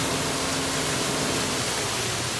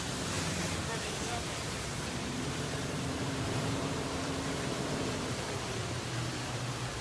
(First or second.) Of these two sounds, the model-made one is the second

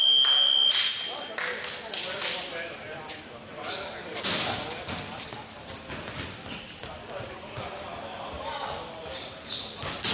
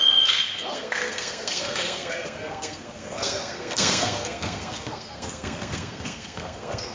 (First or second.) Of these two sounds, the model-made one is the second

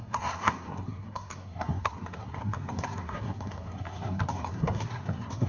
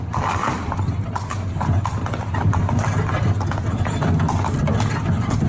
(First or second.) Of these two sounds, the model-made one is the first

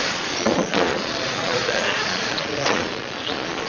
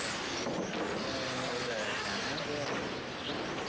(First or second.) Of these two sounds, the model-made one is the first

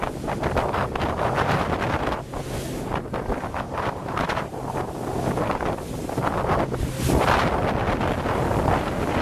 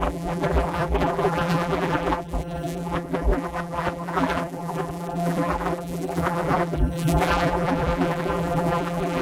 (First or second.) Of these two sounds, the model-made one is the second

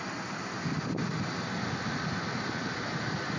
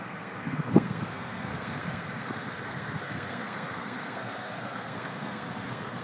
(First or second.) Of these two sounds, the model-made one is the second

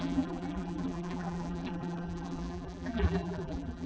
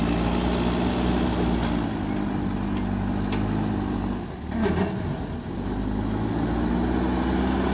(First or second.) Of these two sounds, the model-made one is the first